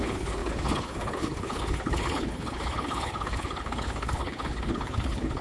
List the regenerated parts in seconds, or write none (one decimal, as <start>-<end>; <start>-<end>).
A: 0.0-5.4